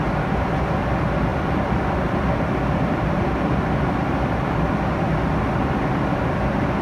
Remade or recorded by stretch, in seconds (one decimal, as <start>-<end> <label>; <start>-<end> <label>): 0.0-1.3 recorded; 1.3-4.7 remade; 4.7-6.8 recorded